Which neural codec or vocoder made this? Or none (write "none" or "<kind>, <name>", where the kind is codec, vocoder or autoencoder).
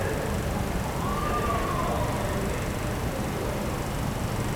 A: none